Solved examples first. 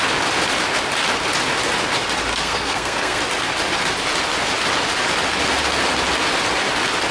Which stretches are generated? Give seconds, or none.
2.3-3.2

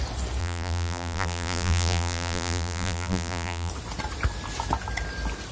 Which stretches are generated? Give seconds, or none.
0.4-3.7

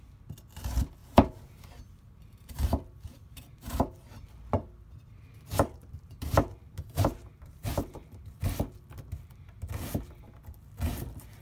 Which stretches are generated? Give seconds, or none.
1.0-4.2; 5.5-8.4

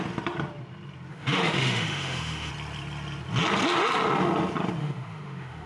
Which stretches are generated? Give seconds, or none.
1.1-2.5; 4.8-5.7